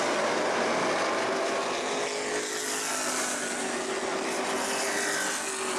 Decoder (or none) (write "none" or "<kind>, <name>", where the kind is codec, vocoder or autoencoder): none